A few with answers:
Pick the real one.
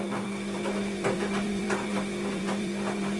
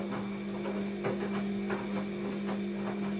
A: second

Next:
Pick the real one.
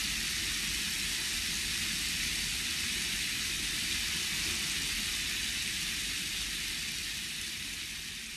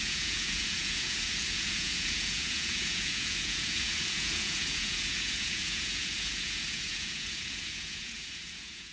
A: first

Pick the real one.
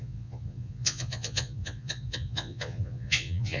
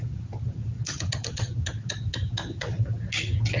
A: second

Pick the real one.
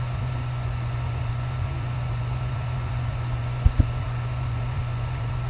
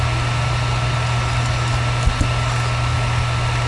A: second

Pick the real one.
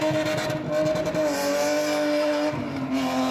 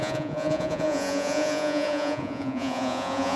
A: first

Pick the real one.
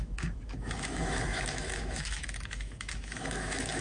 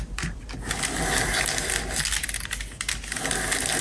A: second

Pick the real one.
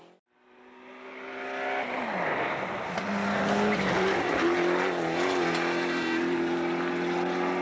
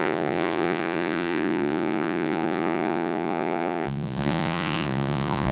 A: first